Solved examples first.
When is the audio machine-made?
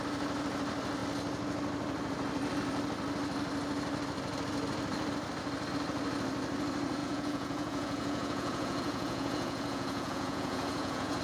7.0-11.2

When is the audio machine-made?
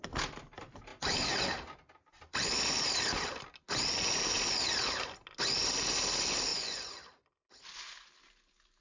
6.5-7.0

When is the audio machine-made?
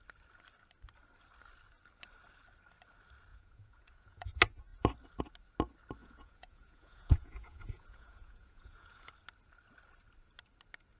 3.3-4.3; 6.0-9.1